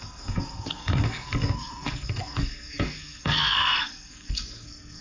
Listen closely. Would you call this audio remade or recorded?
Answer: remade